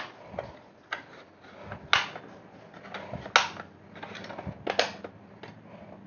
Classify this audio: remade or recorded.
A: recorded